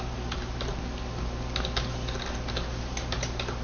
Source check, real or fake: real